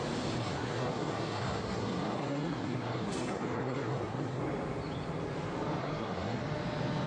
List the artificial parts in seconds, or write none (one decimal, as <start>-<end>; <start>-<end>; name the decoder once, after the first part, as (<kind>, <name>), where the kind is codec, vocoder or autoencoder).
0.4-4.4 (codec, SNAC); 5.8-6.4